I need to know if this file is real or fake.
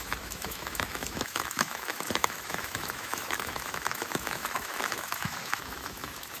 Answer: fake